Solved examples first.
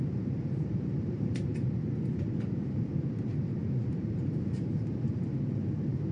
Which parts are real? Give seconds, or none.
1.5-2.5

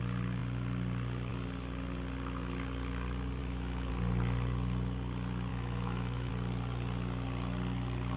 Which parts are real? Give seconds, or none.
0.0-3.4; 3.9-5.5; 6.3-8.2

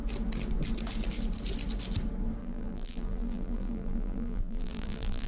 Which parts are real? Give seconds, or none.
0.0-2.4

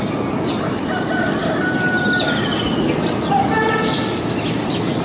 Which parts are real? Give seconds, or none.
0.0-5.0